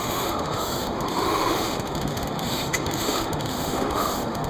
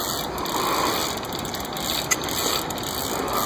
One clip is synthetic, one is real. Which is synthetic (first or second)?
first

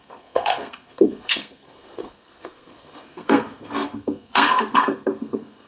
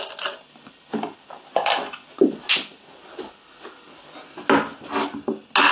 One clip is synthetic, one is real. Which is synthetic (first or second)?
first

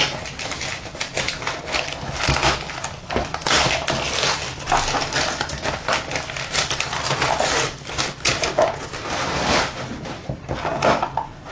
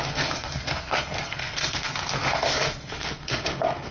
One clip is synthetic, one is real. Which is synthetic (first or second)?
second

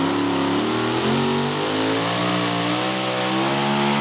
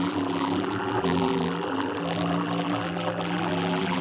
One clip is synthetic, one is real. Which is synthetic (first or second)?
second